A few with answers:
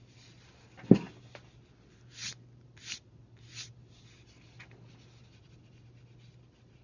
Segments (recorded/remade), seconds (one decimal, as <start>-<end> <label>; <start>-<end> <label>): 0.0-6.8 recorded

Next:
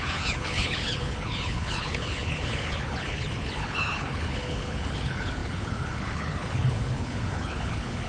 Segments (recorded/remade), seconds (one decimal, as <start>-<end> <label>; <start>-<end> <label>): 0.0-8.1 remade

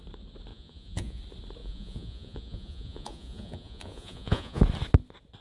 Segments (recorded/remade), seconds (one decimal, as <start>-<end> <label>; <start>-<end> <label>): 0.0-0.5 recorded; 0.5-1.2 remade; 1.2-1.6 recorded; 1.6-4.6 remade; 4.6-5.4 recorded

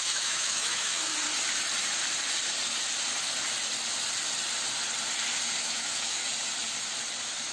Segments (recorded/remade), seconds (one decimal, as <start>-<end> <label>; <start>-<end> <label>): 0.0-1.1 remade; 1.1-5.6 recorded; 5.6-6.2 remade; 6.2-7.5 recorded

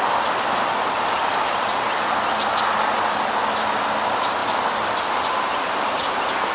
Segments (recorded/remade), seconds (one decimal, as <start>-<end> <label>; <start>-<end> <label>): 0.0-6.5 recorded

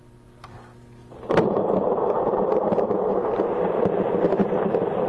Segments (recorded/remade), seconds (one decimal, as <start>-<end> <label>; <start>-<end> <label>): 0.0-1.0 recorded; 1.0-2.0 remade; 2.0-5.1 recorded